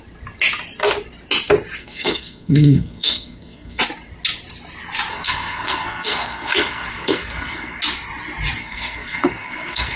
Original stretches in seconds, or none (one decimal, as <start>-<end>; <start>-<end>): 0.0-1.8; 3.8-5.1; 7.8-8.6